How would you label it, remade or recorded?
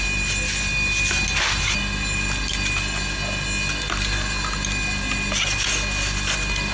recorded